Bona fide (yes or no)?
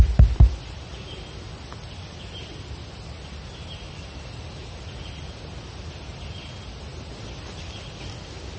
yes